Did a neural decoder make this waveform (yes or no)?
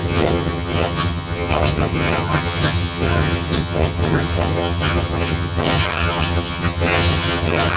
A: yes